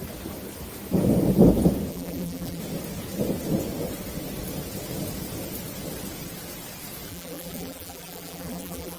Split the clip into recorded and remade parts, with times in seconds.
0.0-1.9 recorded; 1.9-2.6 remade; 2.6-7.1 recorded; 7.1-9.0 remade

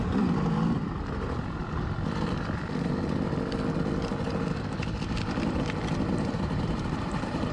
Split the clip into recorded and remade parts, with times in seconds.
0.0-1.6 remade; 1.6-6.1 recorded; 6.1-7.5 remade

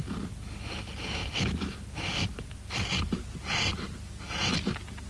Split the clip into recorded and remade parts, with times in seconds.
0.0-5.1 recorded

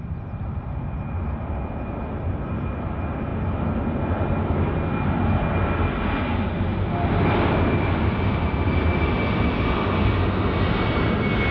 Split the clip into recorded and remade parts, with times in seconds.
0.0-11.5 recorded